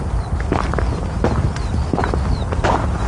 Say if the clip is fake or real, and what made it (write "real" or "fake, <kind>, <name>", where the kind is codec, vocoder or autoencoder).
real